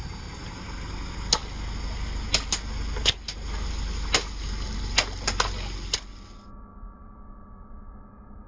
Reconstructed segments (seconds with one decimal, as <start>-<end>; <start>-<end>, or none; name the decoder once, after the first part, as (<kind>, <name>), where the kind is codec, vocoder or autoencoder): 6.7-7.9 (vocoder, BigVGAN v2)